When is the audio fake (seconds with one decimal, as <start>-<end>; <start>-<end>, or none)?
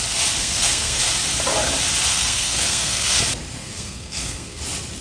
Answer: 0.4-1.0; 2.1-3.2; 3.6-4.6